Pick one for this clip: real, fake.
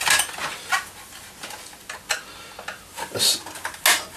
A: real